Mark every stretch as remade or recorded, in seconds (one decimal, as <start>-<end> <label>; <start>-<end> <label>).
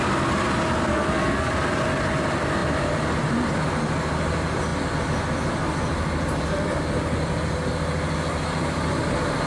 0.0-0.9 recorded; 0.9-1.5 remade; 1.5-9.5 recorded